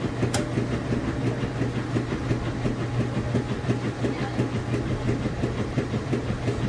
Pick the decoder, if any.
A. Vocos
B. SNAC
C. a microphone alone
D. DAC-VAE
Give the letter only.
C